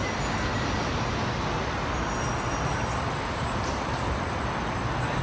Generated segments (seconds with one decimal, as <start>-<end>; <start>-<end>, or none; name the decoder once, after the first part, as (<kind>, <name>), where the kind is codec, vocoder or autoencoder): none